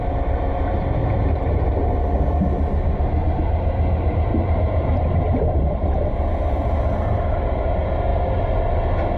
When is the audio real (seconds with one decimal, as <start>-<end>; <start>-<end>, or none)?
0.0-1.0; 1.7-4.3; 6.1-8.1; 8.6-9.2